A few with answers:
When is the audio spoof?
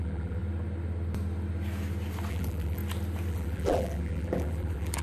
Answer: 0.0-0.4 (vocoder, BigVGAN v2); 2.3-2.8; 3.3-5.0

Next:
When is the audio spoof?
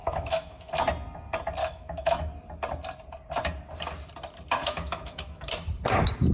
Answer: 0.0-0.7 (autoencoder, DAC-VAE); 1.6-2.2; 4.6-5.5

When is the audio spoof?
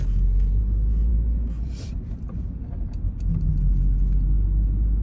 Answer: none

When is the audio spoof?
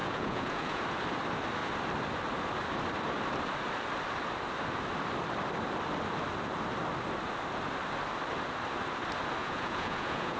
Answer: 0.0-0.8 (vocoder, Vocos); 9.4-10.4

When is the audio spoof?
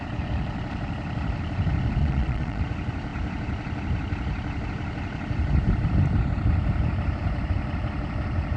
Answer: 2.0-2.6 (vocoder, Vocos)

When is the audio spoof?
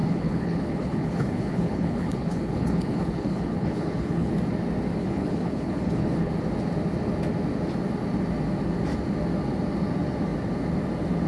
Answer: 0.0-4.3 (codec, HILCodec); 5.0-6.3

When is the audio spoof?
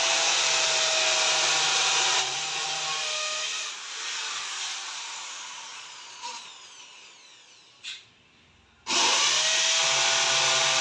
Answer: 5.7-6.5 (vocoder, Vocos)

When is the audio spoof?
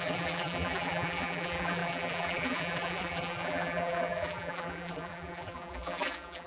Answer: 0.0-6.5 (vocoder, BigVGAN v2)